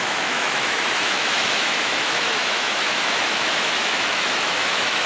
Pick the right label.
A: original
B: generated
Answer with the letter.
B